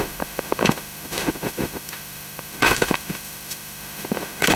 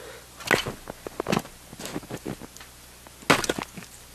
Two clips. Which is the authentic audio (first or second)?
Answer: second